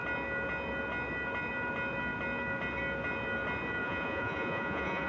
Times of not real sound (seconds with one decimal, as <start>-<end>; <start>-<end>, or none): 3.8-5.1